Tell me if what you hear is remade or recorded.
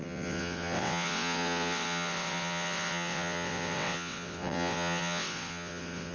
remade